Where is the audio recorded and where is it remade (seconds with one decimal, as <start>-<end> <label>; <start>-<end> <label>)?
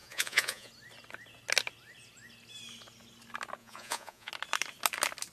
0.0-0.7 remade; 0.7-3.6 recorded; 3.6-4.3 remade; 4.3-5.3 recorded